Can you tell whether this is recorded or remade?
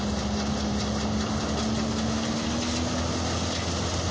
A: recorded